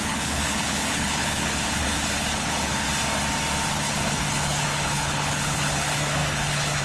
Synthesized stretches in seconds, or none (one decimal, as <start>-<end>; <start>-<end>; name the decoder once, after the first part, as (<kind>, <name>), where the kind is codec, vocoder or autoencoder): 0.0-2.9 (codec, HILCodec); 3.7-6.8